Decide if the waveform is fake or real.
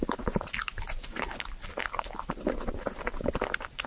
real